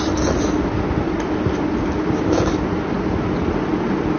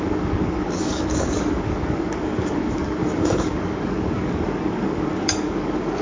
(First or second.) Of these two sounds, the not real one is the second